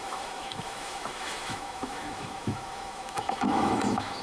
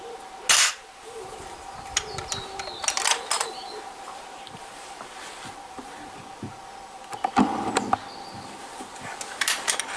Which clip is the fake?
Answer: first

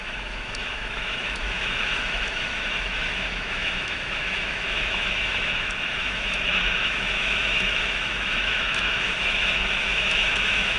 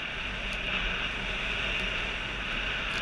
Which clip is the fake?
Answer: first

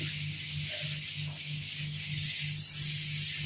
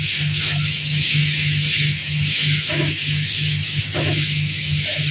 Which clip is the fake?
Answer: second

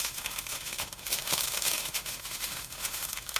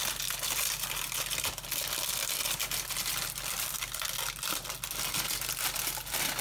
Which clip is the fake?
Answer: first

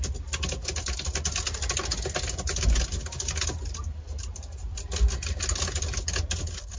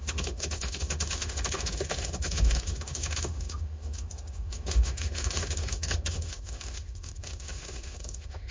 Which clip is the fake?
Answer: second